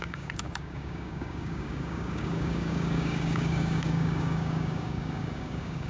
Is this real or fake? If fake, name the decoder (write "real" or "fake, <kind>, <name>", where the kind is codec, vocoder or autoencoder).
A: fake, codec, DAC